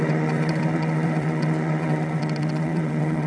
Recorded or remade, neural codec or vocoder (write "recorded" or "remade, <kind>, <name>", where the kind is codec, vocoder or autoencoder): remade, vocoder, WaveNeXt